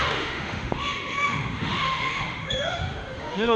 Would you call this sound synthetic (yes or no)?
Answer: yes